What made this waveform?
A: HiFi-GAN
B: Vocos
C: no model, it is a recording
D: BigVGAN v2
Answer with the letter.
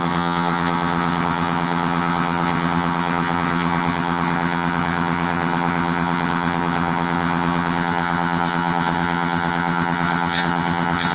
A